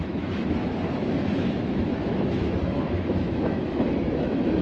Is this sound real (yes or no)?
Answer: no